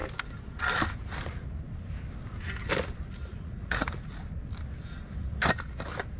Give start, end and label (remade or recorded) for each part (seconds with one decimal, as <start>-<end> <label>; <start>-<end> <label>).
0.0-3.3 recorded; 3.3-4.2 remade; 4.2-6.2 recorded

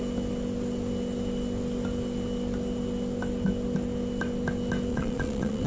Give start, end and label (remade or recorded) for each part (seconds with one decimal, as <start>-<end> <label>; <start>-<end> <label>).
0.0-4.9 recorded; 4.9-5.7 remade

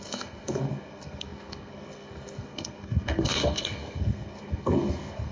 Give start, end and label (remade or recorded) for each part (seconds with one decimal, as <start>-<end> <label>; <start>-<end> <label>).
0.0-5.3 remade

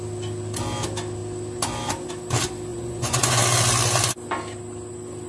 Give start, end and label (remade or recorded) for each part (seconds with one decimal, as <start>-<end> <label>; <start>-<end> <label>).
0.0-2.7 recorded; 2.7-3.4 remade; 3.4-5.3 recorded

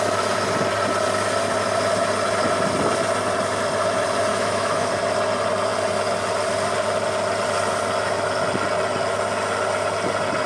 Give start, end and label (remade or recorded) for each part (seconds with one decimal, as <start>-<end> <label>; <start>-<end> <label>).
0.0-4.3 recorded; 4.3-4.9 remade; 4.9-10.5 recorded

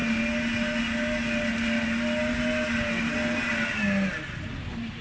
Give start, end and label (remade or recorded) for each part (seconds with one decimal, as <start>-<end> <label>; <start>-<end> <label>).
0.0-5.0 recorded